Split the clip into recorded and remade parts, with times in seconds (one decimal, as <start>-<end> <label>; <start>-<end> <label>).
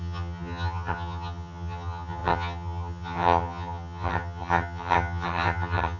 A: 0.0-6.0 remade